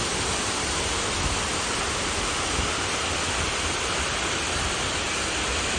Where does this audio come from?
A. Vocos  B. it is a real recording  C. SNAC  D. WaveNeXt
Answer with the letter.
B